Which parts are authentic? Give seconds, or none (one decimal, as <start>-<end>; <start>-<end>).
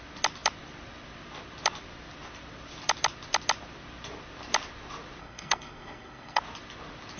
0.0-5.2; 6.4-7.2